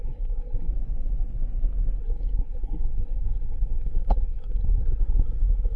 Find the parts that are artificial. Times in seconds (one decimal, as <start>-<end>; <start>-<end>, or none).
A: 0.0-0.7; 2.0-5.8